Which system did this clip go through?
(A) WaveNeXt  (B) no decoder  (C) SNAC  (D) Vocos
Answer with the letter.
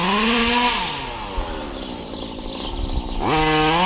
B